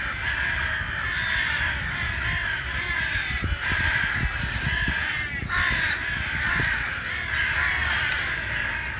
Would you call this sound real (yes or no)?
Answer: yes